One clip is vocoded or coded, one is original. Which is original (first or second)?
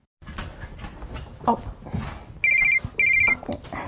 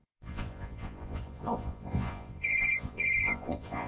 first